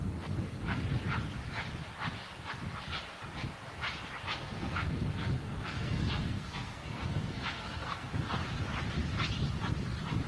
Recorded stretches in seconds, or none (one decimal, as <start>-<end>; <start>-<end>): 0.8-4.4; 8.1-10.3